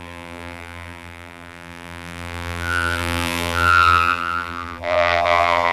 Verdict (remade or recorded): remade